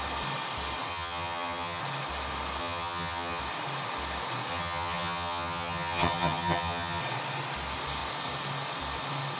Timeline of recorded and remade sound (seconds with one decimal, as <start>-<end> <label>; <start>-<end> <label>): 0.0-0.9 recorded; 0.9-1.8 remade; 1.8-2.6 recorded; 2.6-3.4 remade; 3.4-4.5 recorded; 4.5-7.0 remade; 7.0-9.4 recorded